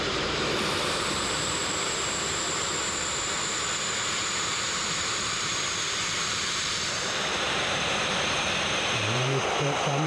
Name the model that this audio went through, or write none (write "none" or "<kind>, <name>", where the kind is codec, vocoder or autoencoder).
vocoder, BigVGAN v2